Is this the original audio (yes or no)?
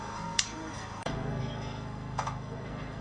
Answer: no